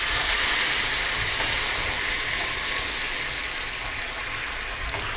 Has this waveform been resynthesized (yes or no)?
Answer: no